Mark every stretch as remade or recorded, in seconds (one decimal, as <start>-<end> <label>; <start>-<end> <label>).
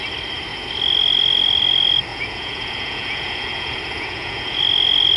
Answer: 0.0-2.1 recorded; 2.1-4.6 remade; 4.6-5.2 recorded